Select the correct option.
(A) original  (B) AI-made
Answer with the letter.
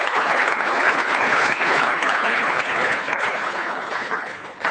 B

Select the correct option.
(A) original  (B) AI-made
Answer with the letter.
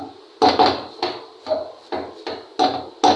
A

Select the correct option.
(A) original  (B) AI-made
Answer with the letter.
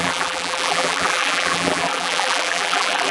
B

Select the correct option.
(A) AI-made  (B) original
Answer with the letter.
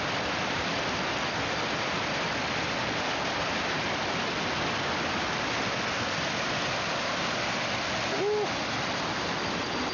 B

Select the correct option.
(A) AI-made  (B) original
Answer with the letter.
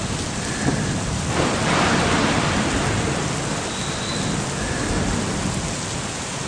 B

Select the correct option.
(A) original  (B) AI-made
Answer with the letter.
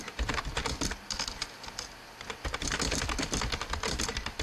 A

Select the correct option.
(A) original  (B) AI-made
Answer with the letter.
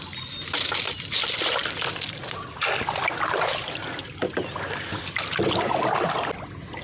A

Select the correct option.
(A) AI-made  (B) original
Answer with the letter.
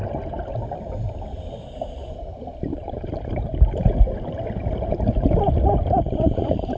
A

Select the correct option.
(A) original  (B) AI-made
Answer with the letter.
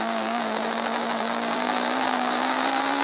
B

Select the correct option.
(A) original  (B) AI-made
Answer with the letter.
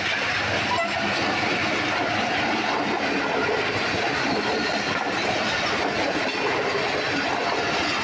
A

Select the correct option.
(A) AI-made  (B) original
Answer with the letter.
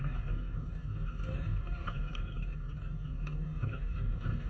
A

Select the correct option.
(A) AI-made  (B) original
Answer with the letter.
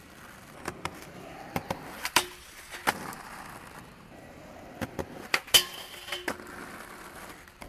B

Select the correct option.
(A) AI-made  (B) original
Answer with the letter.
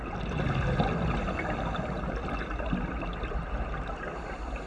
B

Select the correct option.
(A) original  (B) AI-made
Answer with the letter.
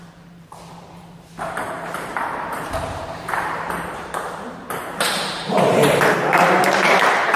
B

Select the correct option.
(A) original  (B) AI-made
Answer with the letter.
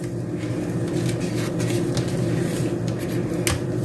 A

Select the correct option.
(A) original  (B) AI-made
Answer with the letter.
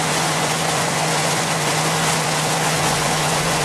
B